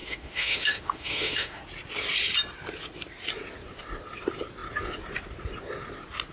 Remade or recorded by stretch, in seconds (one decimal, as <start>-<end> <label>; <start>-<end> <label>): 0.0-1.6 remade; 1.6-6.3 recorded